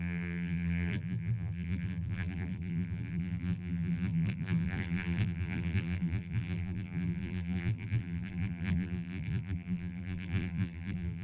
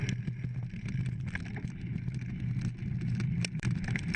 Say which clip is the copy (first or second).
first